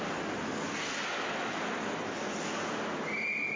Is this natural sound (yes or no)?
yes